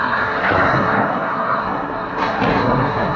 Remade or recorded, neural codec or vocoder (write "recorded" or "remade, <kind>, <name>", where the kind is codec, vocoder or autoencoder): remade, codec, SNAC